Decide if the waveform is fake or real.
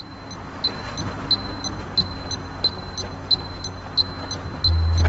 real